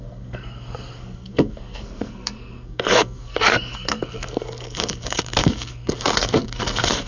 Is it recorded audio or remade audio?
remade